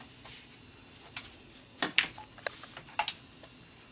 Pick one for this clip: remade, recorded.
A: recorded